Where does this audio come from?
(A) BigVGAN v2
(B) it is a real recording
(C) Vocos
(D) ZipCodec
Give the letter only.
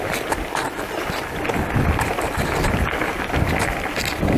B